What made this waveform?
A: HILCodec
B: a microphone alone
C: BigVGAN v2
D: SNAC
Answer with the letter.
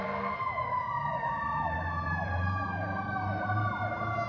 C